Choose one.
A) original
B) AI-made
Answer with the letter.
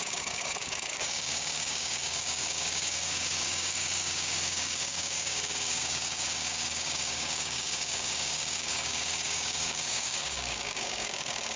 B